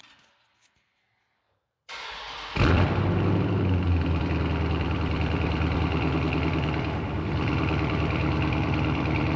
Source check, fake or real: fake